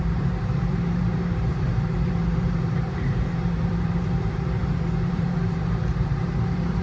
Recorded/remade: remade